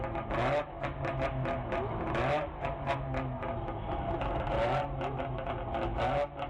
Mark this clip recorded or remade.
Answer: recorded